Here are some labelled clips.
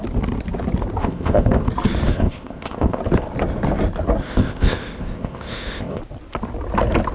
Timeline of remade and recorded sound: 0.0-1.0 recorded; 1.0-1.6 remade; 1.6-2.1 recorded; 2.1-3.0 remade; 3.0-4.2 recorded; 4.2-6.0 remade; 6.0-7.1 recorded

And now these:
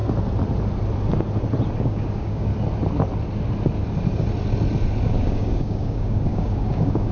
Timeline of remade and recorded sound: 0.0-1.8 recorded; 1.8-2.5 remade; 2.5-5.0 recorded; 5.0-7.1 remade

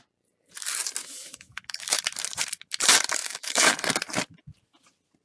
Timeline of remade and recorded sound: 0.0-1.0 recorded; 1.0-2.0 remade; 2.0-3.2 recorded; 3.2-3.7 remade; 3.7-5.2 recorded

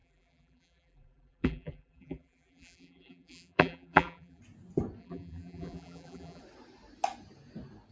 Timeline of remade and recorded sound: 0.0-4.4 remade; 4.4-5.0 recorded; 5.0-6.4 remade; 6.4-7.9 recorded